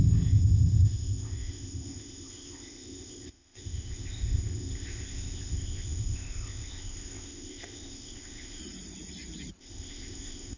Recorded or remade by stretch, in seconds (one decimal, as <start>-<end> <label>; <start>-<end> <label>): 0.0-8.6 remade; 8.6-9.6 recorded; 9.6-10.6 remade